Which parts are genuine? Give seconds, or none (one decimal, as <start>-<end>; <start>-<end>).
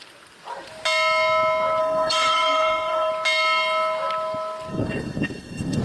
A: 0.0-1.8; 3.1-4.7